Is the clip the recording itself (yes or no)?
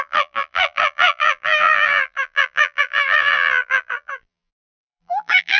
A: no